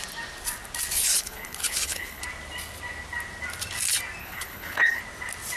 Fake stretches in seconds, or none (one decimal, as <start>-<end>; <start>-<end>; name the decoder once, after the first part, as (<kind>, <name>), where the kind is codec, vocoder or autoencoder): 1.1-2.2 (codec, HILCodec); 4.2-5.0